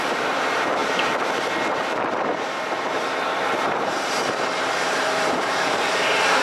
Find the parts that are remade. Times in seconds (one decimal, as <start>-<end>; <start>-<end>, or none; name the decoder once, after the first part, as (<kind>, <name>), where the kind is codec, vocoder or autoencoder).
0.0-0.8 (vocoder, BigVGAN v2); 1.7-6.4